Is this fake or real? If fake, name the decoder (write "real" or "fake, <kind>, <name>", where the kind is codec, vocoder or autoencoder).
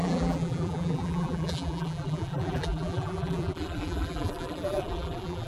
fake, vocoder, BigVGAN v2